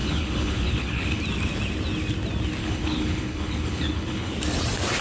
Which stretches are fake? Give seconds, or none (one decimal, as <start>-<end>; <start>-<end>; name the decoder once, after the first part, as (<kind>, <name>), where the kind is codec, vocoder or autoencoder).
0.0-1.2 (codec, HILCodec); 2.6-4.3